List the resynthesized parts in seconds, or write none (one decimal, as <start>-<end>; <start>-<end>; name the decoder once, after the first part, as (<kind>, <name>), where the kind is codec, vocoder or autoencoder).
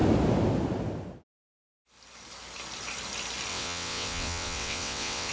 3.5-5.3 (vocoder, WaveNeXt)